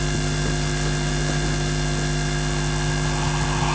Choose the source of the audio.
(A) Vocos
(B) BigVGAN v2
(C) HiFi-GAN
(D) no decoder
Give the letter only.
D